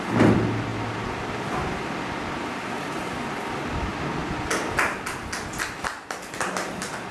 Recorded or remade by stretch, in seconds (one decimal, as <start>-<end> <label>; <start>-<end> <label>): 0.0-7.1 recorded